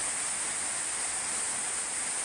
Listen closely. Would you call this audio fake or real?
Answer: real